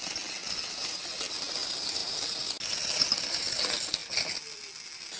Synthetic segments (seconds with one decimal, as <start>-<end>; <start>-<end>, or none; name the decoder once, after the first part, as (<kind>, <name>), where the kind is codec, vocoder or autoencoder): none